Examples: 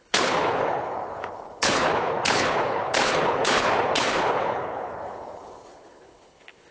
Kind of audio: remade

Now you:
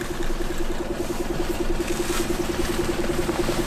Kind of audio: recorded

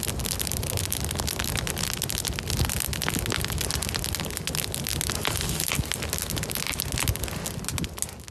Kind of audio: recorded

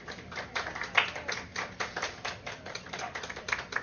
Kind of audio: recorded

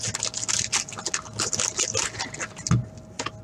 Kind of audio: recorded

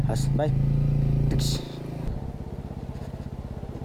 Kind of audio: recorded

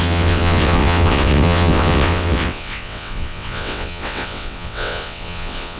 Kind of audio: remade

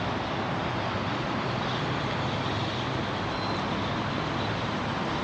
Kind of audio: recorded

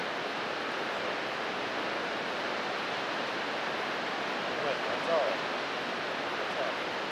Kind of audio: recorded